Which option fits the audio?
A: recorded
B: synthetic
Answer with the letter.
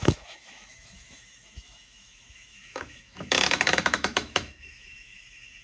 B